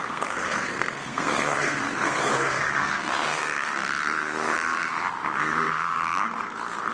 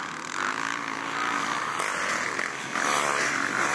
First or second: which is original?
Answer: second